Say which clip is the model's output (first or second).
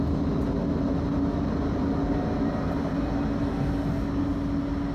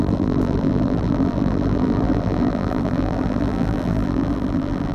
second